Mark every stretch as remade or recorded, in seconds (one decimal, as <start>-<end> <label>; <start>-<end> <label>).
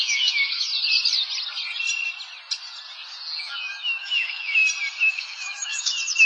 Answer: 0.0-0.7 remade; 0.7-3.4 recorded; 3.4-4.6 remade; 4.6-5.1 recorded; 5.1-6.3 remade